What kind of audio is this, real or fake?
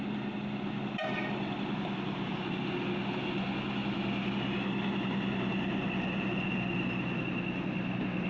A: real